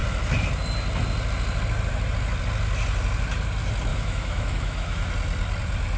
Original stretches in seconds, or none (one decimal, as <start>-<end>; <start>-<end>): 0.0-3.9; 5.1-6.0